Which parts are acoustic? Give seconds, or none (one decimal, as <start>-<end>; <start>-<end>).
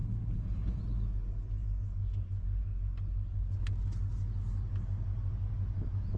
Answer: 0.8-6.2